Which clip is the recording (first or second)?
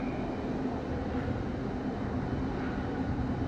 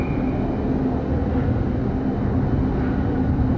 second